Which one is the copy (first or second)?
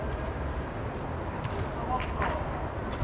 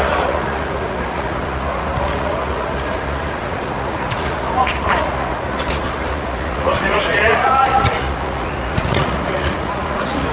second